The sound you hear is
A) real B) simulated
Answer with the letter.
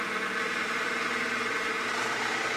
B